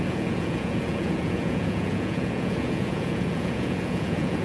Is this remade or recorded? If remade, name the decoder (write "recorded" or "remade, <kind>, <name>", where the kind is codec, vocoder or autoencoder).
remade, vocoder, Vocos